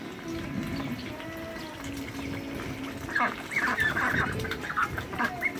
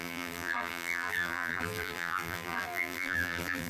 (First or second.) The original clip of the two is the first